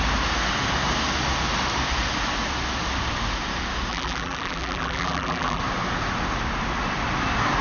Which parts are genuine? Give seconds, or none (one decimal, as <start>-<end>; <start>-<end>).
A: 0.0-3.9; 5.6-7.6